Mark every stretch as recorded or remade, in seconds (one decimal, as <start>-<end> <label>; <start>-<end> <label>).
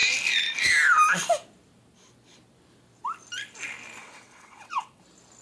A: 0.0-4.0 recorded; 4.0-5.0 remade; 5.0-5.4 recorded